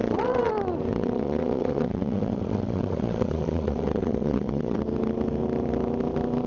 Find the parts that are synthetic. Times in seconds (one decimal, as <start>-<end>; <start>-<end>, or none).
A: 0.0-0.5; 0.9-4.8